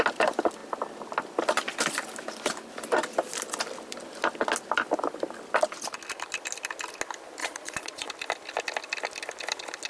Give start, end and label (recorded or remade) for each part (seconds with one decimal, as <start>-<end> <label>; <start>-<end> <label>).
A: 0.0-7.4 recorded; 7.4-8.1 remade; 8.1-9.9 recorded